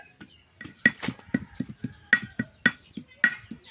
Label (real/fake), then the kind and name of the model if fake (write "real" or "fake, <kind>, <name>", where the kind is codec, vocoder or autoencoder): real